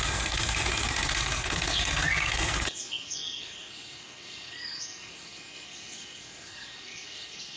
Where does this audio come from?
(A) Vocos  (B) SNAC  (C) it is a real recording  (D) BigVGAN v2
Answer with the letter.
B